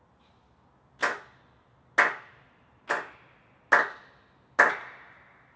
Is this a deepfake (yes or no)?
no